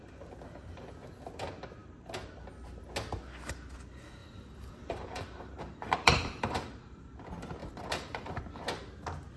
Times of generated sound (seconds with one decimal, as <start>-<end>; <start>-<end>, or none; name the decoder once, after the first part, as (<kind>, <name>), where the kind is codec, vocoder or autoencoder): 4.2-7.1 (vocoder, BigVGAN v2); 7.6-8.4